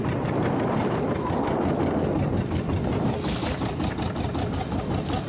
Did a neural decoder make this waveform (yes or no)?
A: no